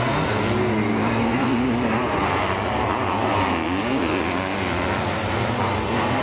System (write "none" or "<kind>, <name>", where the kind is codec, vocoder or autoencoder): none